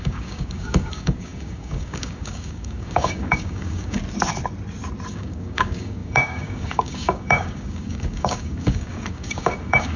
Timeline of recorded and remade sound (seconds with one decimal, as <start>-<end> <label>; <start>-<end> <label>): 0.0-4.0 remade; 4.0-5.1 recorded; 5.1-10.0 remade